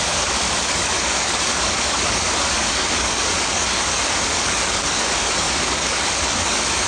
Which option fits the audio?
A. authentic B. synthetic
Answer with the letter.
B